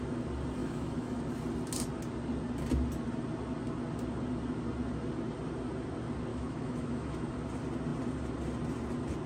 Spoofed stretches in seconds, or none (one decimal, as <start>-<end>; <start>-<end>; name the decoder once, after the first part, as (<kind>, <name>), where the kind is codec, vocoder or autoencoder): 0.6-1.2 (autoencoder, DAC-VAE); 6.3-7.3

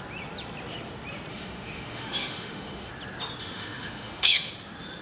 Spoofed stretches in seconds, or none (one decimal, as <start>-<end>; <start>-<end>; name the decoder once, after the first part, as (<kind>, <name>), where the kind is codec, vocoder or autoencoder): 1.3-2.9 (autoencoder, DAC-VAE); 3.4-4.5